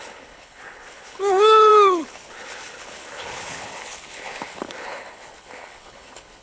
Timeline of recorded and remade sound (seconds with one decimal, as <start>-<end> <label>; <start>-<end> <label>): 0.0-6.4 remade